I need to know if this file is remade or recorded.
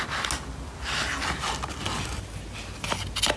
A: recorded